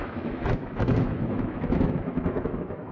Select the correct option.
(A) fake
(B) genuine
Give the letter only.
A